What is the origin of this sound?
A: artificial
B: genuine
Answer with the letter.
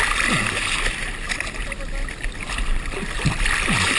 B